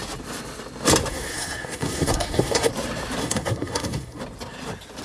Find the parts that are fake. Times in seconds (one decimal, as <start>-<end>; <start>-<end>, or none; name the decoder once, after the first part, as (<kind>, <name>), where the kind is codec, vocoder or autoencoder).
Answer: 1.1-2.7 (codec, SNAC); 3.2-4.2